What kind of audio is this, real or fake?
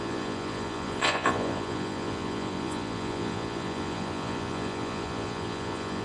fake